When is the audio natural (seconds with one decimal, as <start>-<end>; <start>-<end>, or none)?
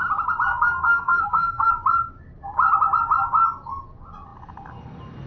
0.0-0.5; 1.7-5.3